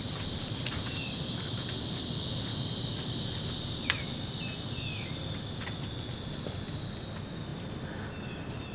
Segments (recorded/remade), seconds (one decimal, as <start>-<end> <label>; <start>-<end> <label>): 0.0-8.7 recorded